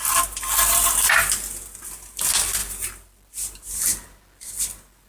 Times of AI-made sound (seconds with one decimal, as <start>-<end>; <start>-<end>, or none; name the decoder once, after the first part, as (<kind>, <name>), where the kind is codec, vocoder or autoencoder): none